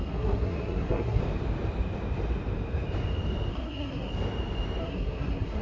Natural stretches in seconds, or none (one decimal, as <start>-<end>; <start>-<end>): 1.2-3.5; 4.1-4.8